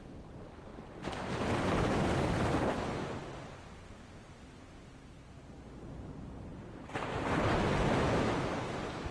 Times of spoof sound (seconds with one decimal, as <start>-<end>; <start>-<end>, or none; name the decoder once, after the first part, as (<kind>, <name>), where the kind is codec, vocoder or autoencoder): none